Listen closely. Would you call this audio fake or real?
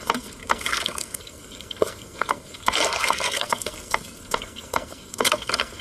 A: fake